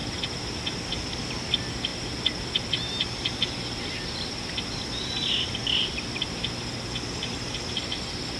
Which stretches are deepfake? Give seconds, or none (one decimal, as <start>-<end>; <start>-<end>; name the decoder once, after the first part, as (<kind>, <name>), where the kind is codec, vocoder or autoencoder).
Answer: none